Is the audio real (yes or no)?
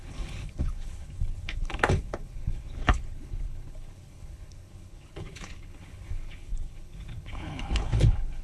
no